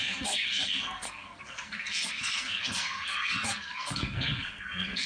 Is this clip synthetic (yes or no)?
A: yes